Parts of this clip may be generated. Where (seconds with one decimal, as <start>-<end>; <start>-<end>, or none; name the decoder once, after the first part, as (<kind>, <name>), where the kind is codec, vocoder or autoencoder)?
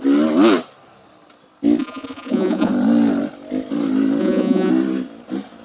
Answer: 1.8-2.7 (vocoder, Vocos); 4.2-4.7